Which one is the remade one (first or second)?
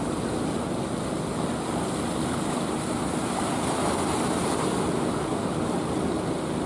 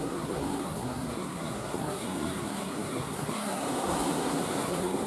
second